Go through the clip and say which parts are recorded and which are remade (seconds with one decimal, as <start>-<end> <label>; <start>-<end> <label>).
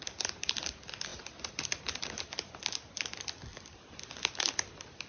0.0-5.1 recorded